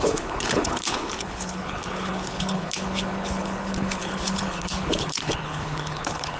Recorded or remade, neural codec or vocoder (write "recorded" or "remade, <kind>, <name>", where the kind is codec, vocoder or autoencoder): remade, codec, HILCodec